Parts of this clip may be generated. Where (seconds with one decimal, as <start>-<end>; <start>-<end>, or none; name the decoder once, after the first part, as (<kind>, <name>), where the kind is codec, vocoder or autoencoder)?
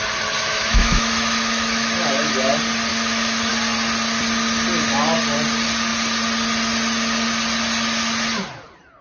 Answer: 0.4-2.3 (autoencoder, DAC-VAE); 2.9-3.5